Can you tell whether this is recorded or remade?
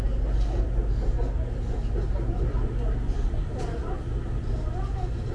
recorded